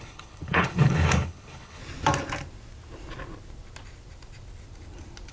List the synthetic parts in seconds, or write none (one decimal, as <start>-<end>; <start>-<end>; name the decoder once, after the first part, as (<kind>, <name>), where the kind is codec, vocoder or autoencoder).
0.0-1.8 (codec, HILCodec)